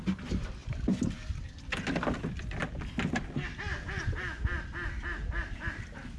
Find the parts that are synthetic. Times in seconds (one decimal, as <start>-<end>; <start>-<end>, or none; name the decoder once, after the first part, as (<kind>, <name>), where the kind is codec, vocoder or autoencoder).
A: none